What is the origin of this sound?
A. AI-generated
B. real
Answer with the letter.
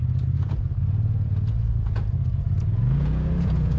A